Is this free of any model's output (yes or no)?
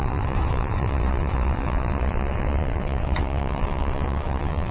no